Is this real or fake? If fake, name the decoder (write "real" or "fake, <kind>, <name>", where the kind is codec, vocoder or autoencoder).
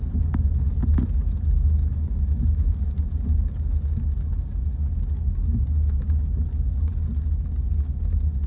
real